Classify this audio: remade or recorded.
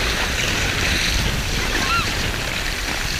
recorded